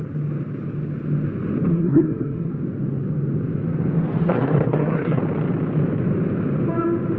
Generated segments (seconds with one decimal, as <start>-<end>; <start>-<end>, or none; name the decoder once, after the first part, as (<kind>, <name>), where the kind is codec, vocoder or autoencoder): 1.7-2.5 (codec, SNAC); 4.2-5.2